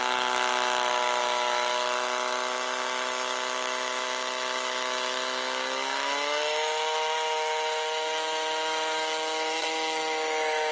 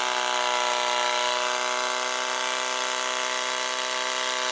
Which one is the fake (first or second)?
first